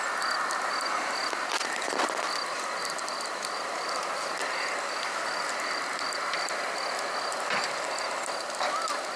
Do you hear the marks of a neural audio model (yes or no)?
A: no